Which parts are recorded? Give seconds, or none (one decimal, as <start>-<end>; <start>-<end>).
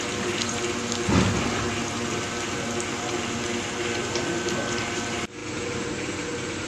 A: 0.0-6.7